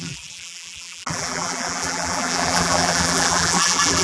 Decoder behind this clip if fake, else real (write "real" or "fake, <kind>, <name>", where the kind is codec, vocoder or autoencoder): fake, vocoder, BigVGAN v2